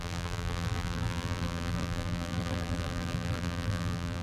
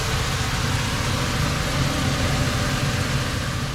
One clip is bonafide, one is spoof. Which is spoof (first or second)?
first